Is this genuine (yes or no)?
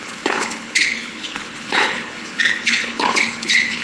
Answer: no